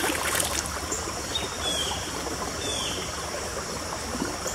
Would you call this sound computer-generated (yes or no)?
no